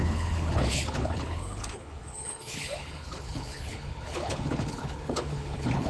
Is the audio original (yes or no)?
no